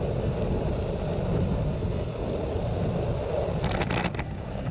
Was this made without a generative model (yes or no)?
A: yes